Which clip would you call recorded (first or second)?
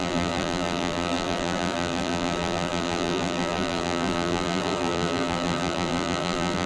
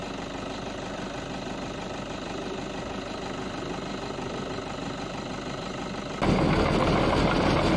second